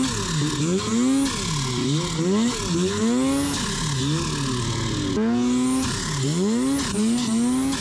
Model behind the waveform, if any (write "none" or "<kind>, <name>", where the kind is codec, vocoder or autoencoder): none